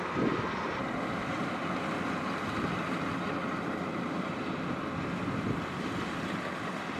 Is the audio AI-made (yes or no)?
no